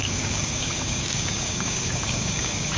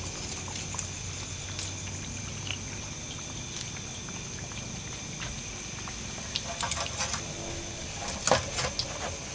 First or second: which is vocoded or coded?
first